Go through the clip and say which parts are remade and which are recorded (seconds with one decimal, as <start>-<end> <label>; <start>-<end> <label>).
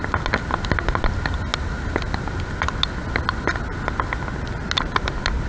0.0-5.5 recorded